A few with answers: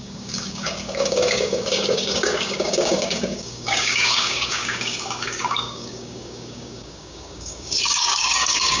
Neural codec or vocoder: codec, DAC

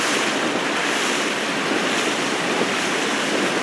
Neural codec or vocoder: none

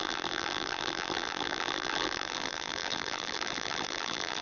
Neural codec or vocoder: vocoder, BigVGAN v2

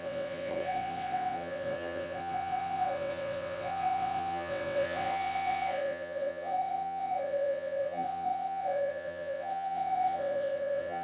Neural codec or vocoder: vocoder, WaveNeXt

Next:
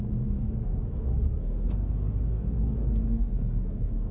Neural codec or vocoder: codec, SNAC